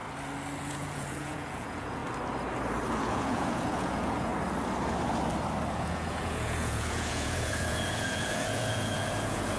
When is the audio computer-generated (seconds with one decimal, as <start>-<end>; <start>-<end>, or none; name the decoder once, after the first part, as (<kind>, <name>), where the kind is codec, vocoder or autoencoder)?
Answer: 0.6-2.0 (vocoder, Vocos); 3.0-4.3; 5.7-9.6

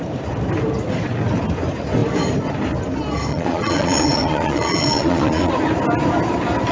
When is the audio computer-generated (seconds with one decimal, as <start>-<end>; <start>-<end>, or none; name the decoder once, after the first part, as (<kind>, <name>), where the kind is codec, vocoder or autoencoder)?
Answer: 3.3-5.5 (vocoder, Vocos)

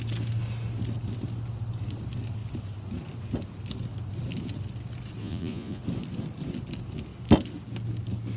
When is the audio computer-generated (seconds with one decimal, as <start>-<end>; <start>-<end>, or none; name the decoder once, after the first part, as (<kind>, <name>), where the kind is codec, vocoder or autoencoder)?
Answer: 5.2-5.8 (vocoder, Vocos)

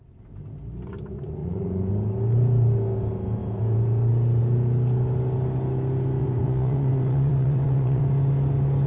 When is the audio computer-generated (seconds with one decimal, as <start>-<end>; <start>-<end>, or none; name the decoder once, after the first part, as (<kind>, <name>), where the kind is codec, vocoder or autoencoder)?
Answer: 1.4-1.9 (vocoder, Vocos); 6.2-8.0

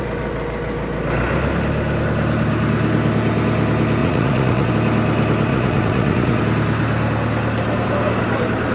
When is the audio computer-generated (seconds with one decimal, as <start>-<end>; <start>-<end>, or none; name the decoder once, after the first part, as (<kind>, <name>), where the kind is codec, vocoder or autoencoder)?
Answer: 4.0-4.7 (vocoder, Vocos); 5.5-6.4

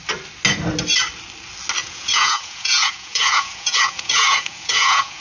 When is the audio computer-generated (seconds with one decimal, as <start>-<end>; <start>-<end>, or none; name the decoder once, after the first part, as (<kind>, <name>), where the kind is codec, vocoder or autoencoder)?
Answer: 1.8-5.2 (vocoder, Vocos)

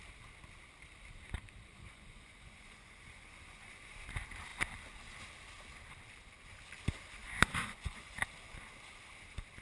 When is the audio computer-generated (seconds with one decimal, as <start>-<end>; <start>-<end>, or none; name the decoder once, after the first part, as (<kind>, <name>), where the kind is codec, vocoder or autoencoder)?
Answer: 1.7-4.1 (vocoder, Vocos); 7.2-8.2

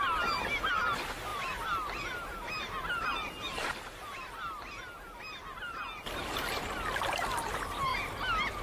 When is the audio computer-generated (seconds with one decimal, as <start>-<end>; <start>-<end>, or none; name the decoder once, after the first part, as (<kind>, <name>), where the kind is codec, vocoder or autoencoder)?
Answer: none